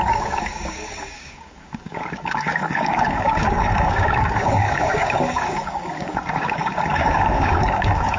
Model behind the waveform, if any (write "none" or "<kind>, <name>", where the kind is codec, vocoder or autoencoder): codec, DAC